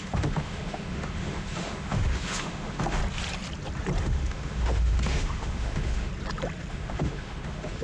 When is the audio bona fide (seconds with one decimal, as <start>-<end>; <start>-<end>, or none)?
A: 3.0-4.0; 6.1-6.7